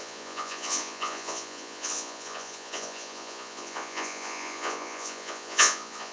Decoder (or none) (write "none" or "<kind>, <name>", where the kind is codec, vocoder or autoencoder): vocoder, Vocos